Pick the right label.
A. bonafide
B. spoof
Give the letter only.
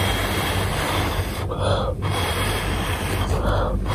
A